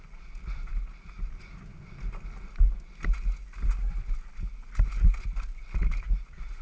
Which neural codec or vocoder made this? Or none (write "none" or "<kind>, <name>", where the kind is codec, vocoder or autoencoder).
none